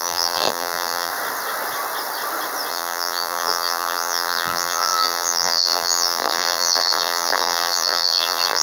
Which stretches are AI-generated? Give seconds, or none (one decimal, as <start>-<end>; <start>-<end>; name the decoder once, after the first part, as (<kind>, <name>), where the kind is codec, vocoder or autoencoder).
0.0-1.1 (vocoder, BigVGAN v2); 2.7-8.6